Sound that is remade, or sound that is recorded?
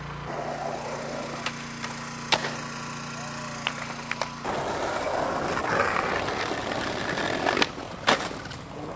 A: recorded